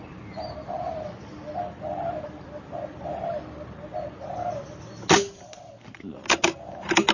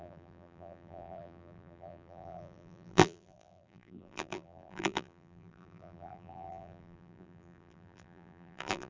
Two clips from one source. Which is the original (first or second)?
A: first